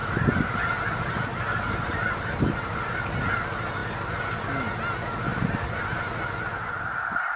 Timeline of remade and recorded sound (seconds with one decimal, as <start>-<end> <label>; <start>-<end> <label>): 0.0-2.9 remade; 2.9-7.4 recorded